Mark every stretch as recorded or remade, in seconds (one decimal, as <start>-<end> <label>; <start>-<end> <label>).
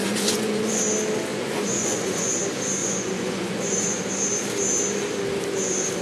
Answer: 0.0-0.8 remade; 0.8-1.3 recorded; 1.3-2.3 remade; 2.3-2.8 recorded; 2.8-4.0 remade; 4.0-6.0 recorded